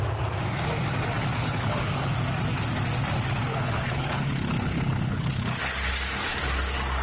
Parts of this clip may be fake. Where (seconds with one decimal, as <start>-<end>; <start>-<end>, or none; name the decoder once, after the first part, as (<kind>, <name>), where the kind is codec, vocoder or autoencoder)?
1.4-2.1 (codec, HILCodec); 3.5-5.6